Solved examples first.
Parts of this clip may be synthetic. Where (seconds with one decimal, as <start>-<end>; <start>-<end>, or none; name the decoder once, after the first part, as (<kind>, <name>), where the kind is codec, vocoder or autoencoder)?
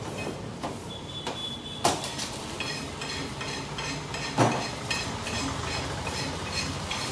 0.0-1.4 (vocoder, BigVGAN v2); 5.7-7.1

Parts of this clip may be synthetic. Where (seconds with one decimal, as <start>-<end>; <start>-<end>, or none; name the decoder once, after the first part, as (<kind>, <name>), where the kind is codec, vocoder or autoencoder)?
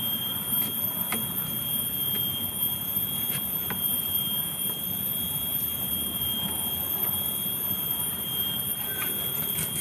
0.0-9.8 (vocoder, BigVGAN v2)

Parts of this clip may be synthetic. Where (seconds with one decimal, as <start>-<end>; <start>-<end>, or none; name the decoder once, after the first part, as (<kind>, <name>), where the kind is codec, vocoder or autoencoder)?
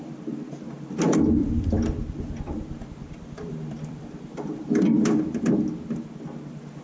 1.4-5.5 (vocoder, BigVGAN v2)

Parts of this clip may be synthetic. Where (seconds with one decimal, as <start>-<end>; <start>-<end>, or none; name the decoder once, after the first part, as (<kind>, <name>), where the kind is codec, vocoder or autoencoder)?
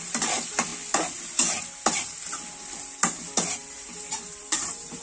0.0-0.7 (vocoder, BigVGAN v2); 3.7-5.0